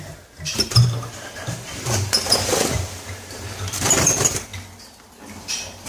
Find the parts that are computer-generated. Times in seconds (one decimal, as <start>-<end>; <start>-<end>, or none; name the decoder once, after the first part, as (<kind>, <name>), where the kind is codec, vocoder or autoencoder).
0.0-4.5 (vocoder, BigVGAN v2); 5.4-5.9